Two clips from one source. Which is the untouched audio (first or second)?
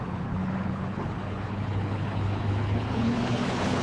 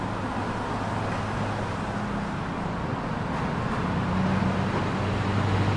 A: second